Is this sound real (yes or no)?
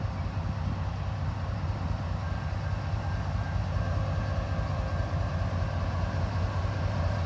yes